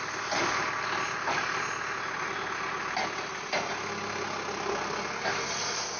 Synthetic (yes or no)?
no